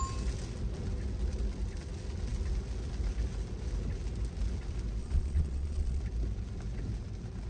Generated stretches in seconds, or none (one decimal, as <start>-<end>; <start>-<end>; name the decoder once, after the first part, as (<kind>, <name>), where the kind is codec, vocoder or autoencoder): 5.0-6.0 (vocoder, Vocos)